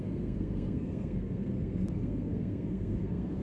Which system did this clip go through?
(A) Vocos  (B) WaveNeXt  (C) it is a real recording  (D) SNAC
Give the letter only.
D